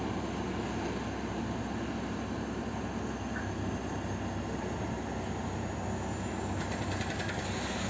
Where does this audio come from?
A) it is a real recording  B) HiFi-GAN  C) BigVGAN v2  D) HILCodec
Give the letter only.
A